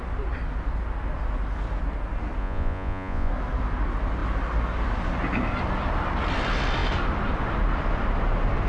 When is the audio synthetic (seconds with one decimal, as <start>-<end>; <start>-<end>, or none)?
2.4-3.3